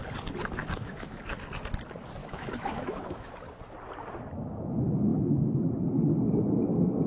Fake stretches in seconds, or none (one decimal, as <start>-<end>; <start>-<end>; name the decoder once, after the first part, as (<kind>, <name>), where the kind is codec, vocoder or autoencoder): 0.6-1.2 (autoencoder, DAC-VAE); 2.2-3.3; 5.1-5.6